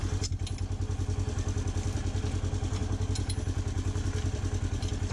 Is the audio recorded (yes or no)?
yes